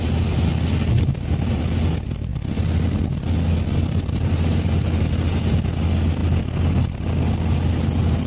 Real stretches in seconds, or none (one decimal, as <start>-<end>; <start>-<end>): 0.0-8.3